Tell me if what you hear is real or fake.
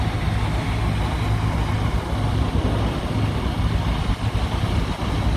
real